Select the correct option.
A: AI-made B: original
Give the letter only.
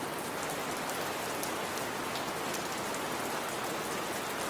B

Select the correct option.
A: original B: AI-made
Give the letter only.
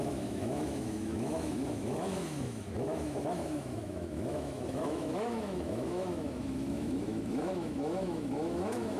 B